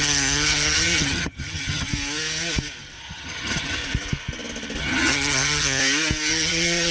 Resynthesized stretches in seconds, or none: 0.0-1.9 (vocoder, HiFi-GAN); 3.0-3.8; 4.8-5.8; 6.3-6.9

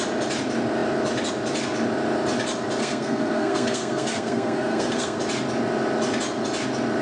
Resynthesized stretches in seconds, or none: 2.8-5.2 (codec, SNAC)

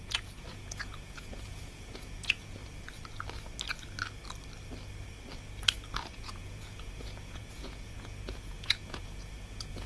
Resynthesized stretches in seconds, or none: 0.0-2.6 (vocoder, Vocos); 6.1-9.9

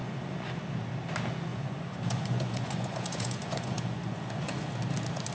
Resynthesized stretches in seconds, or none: 0.0-0.6 (vocoder, Vocos); 1.5-4.7

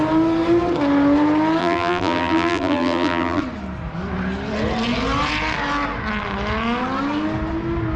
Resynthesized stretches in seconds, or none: 1.6-3.4 (vocoder, BigVGAN v2)